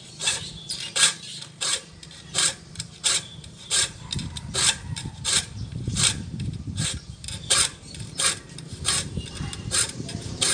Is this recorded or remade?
remade